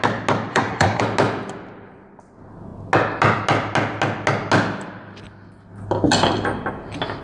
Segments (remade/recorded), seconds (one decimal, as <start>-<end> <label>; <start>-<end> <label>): 0.0-0.5 recorded; 0.5-1.0 remade; 1.0-7.2 recorded

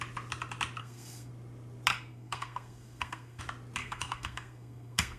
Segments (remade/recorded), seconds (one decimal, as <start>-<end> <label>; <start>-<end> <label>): 0.0-0.8 recorded; 0.8-1.3 remade; 1.3-1.9 recorded; 1.9-3.4 remade; 3.4-3.8 recorded; 3.8-5.2 remade